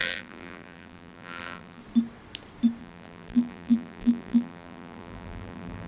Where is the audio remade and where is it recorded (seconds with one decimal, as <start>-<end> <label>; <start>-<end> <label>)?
0.0-1.8 remade; 1.8-2.8 recorded; 2.8-5.9 remade